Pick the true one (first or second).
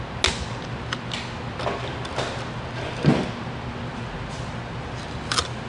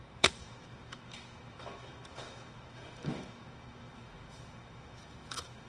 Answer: first